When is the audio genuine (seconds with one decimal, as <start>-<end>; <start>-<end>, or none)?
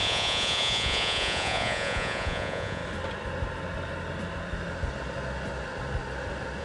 2.8-6.6